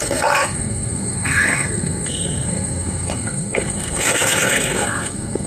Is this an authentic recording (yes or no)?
no